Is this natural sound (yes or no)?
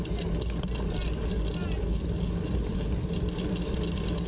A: yes